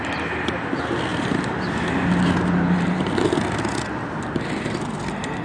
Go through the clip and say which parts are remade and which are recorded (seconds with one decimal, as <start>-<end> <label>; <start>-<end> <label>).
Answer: 0.0-5.4 recorded